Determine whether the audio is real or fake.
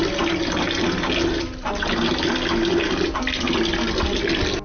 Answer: real